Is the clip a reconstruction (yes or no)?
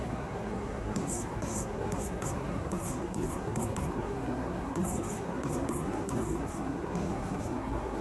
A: yes